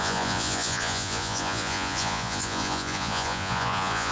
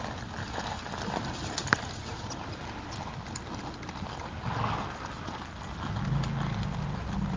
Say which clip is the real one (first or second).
second